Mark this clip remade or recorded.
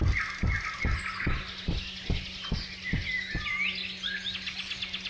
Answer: recorded